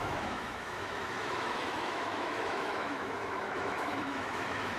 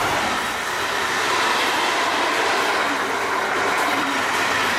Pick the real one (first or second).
second